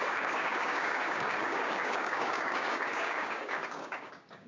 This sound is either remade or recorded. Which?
remade